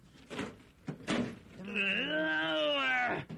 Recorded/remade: recorded